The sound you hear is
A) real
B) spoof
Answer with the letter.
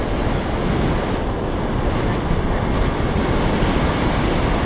A